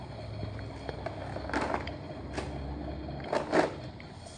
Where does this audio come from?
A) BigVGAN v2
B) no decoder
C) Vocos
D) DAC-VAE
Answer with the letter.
B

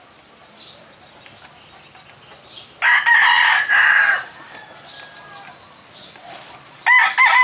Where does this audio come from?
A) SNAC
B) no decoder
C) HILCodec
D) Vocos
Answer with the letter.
B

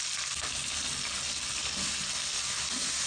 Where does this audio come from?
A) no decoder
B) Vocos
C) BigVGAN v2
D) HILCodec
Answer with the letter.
A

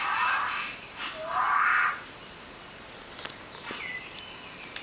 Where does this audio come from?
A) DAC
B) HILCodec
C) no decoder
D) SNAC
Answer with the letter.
C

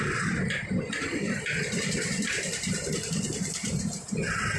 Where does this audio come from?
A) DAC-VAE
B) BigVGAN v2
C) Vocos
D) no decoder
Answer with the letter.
B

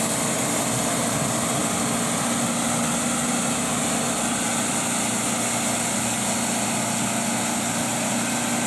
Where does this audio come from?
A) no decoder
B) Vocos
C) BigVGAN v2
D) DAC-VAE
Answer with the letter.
A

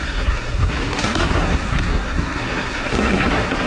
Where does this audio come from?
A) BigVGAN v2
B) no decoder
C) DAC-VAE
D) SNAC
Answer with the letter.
D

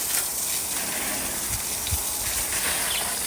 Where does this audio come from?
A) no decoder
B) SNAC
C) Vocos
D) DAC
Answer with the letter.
A